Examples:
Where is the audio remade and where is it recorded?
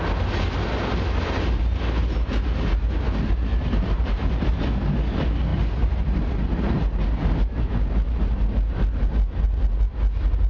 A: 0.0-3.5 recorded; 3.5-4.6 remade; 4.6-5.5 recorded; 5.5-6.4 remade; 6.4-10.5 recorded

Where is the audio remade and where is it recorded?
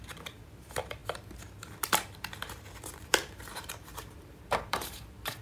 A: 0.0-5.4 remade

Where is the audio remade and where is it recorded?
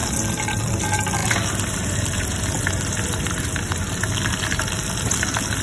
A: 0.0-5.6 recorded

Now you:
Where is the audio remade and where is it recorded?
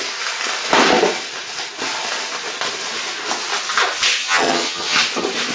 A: 0.0-4.2 recorded; 4.2-5.0 remade; 5.0-5.5 recorded